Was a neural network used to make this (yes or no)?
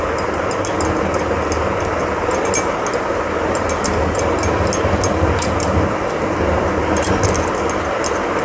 no